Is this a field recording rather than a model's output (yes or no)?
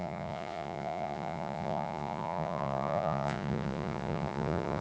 no